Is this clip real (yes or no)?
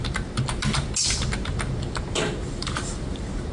yes